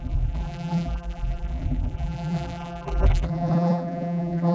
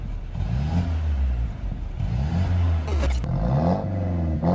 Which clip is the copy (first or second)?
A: first